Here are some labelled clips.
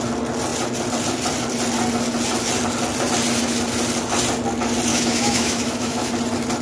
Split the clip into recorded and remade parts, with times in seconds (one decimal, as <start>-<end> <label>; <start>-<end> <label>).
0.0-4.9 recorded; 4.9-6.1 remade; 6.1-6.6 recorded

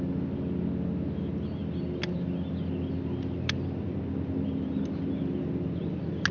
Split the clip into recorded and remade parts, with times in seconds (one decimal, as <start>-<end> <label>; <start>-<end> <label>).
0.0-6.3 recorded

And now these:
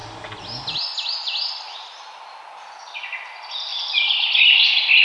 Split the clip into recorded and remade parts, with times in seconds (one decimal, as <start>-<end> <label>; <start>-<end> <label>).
0.0-5.0 recorded

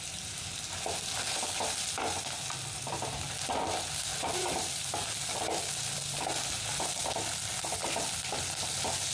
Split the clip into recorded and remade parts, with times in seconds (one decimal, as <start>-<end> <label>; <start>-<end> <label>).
0.0-9.1 recorded

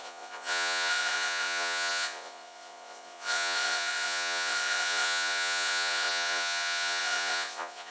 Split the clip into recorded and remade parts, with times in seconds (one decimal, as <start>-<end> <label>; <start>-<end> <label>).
0.0-7.9 remade

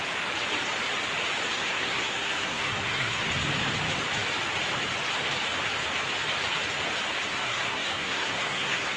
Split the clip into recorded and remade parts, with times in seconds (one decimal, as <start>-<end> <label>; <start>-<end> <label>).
0.0-1.5 recorded; 1.5-3.2 remade; 3.2-7.3 recorded; 7.3-9.0 remade